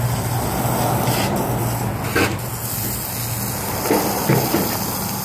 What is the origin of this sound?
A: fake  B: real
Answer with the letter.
B